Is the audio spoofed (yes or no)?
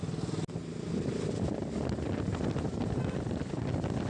no